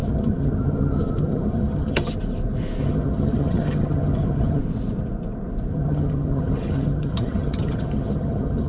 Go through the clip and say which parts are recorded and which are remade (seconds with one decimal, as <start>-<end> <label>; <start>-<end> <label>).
0.0-2.1 remade; 2.1-2.8 recorded; 2.8-4.6 remade; 4.6-5.7 recorded; 5.7-8.7 remade